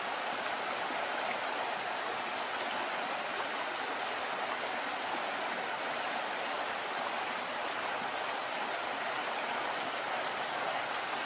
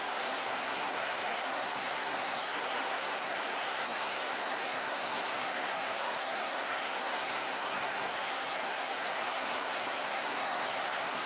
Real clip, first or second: first